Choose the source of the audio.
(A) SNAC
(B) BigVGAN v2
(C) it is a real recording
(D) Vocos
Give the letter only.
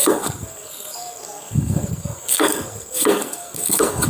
A